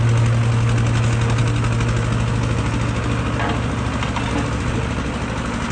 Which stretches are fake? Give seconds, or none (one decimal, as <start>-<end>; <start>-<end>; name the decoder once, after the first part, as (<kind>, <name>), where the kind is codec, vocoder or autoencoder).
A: none